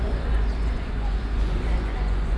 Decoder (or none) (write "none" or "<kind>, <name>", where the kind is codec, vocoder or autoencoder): vocoder, Vocos